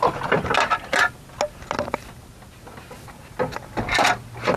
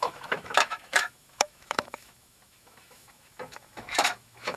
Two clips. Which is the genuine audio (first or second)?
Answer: first